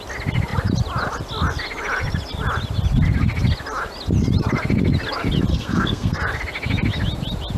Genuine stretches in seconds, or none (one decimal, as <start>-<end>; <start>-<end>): 0.0-5.5; 6.2-7.6